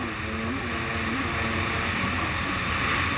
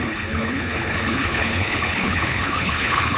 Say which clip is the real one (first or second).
first